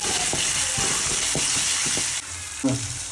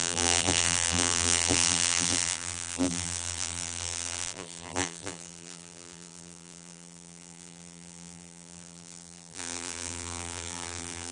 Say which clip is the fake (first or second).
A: second